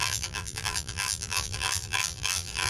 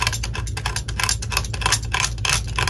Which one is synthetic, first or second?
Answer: first